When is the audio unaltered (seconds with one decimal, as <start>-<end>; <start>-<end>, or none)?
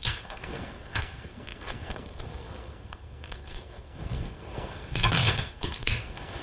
none